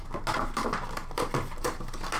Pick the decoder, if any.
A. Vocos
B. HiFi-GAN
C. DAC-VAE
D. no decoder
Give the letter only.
D